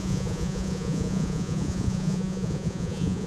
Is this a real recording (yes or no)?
no